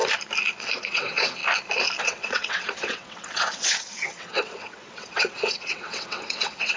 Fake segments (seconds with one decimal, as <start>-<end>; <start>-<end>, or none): 0.8-1.4; 2.0-6.8